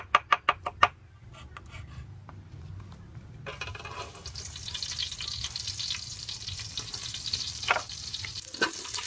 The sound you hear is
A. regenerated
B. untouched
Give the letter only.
B